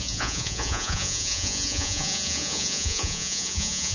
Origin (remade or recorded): remade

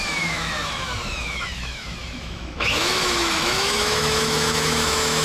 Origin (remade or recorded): remade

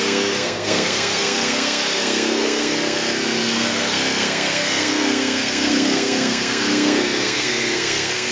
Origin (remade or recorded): remade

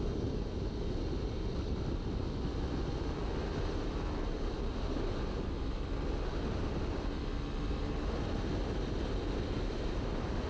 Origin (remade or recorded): recorded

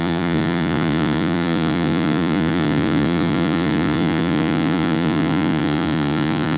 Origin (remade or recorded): remade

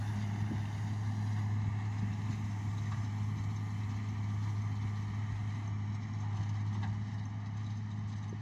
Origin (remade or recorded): recorded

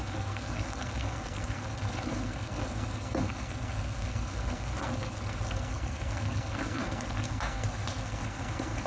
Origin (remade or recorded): remade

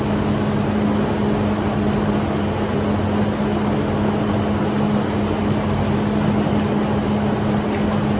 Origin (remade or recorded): recorded